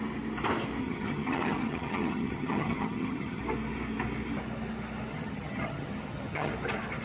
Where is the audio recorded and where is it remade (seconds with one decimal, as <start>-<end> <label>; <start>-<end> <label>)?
0.0-0.8 recorded; 0.8-3.4 remade; 3.4-5.1 recorded; 5.1-6.5 remade; 6.5-7.0 recorded